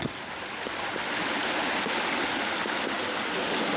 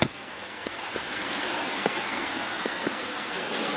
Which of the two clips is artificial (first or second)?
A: second